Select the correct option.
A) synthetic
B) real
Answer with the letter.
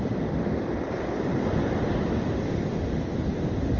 A